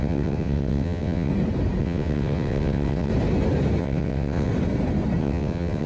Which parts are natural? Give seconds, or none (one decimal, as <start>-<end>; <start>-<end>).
1.3-1.8; 3.1-3.8; 4.5-5.2